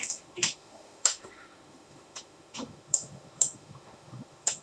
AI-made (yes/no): yes